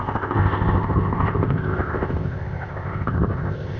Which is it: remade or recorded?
remade